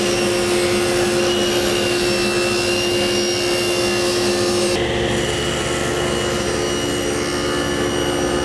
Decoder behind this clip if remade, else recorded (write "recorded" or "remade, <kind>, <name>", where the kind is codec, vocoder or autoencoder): recorded